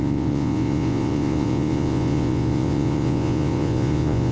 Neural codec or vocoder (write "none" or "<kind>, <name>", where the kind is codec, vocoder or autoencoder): vocoder, Vocos